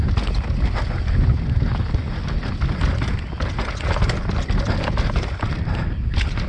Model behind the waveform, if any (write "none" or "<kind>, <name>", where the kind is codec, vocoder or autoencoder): none